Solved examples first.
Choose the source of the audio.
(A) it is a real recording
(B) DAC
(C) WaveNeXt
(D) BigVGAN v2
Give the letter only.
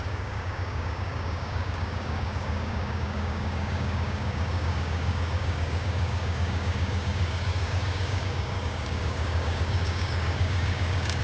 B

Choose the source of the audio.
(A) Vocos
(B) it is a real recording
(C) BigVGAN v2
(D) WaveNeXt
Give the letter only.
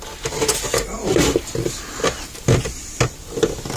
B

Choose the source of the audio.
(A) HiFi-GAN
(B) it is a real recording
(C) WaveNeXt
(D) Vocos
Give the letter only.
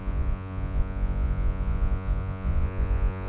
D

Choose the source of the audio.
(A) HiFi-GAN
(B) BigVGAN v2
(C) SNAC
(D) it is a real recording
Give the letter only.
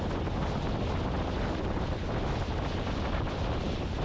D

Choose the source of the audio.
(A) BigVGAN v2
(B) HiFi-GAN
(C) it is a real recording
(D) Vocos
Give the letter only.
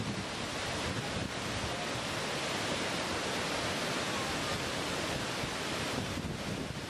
C